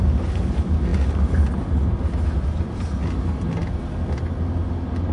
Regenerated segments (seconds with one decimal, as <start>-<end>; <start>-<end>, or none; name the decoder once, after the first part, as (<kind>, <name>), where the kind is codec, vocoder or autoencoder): none